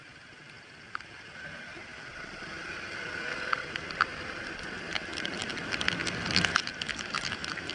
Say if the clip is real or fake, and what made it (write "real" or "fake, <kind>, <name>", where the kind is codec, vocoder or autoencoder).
real